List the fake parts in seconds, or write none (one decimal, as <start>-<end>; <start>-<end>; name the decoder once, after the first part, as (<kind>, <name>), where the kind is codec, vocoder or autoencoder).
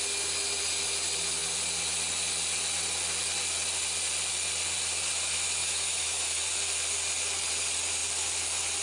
5.6-6.4 (autoencoder, DAC-VAE)